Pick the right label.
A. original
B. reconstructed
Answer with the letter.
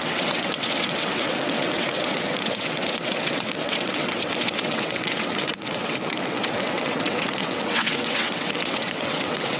B